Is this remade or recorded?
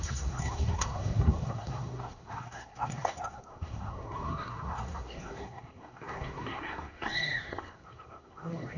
remade